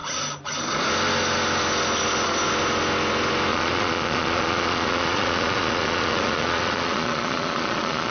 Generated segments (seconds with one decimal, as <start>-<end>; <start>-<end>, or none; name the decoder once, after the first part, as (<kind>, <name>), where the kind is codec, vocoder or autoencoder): 3.5-8.1 (vocoder, Vocos)